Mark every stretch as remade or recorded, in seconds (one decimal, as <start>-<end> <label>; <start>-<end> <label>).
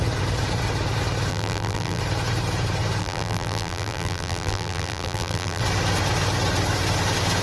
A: 0.0-1.3 recorded; 1.3-2.0 remade; 2.0-3.0 recorded; 3.0-5.6 remade; 5.6-7.4 recorded